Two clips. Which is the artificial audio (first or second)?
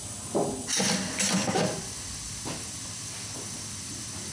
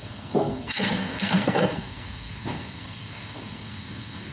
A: second